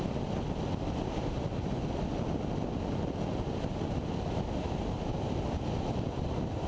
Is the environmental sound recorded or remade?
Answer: recorded